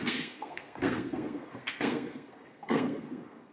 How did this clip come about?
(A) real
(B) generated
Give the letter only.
B